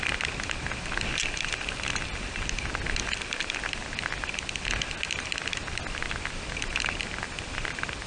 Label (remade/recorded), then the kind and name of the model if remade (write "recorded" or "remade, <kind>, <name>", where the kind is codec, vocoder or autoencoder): recorded